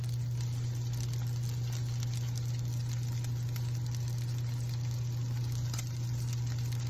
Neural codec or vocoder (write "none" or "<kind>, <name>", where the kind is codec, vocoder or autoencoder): none